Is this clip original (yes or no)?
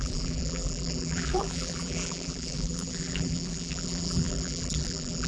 no